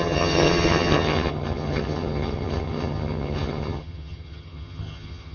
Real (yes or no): no